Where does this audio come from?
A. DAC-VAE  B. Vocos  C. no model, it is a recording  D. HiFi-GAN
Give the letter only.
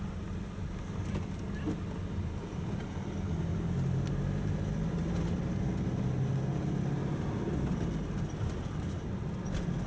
C